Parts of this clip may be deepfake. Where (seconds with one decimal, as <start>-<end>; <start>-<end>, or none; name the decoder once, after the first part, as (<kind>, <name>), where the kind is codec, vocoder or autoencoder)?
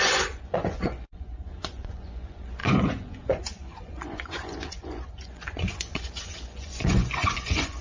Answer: 0.0-7.8 (vocoder, Vocos)